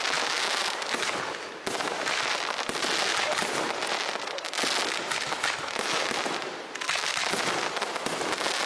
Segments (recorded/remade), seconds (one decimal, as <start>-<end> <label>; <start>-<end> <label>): 0.0-8.7 recorded